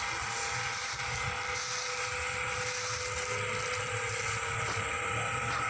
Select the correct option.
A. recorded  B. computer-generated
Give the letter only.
A